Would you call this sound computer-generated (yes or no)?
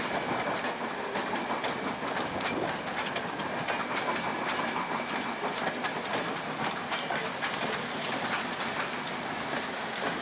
no